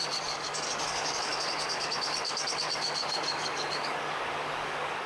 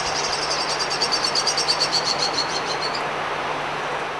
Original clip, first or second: second